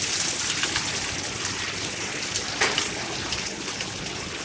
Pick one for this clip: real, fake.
real